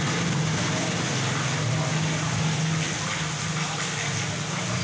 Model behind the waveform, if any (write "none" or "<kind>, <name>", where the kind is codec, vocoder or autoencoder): none